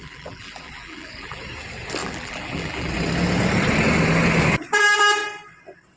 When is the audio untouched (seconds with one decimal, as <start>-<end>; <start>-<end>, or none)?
1.4-2.0; 2.9-6.0